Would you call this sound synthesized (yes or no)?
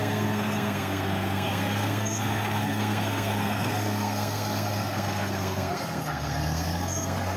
yes